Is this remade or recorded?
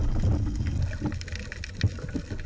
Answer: recorded